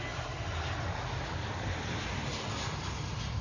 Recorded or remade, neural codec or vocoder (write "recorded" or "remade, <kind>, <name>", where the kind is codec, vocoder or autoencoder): recorded